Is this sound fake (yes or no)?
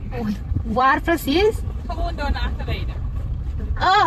yes